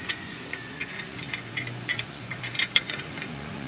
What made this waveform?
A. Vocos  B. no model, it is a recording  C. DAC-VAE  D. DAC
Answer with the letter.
A